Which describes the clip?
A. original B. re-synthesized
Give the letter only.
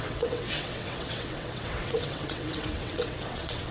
B